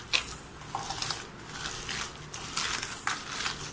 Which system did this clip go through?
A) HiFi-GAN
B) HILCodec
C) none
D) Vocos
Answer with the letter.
C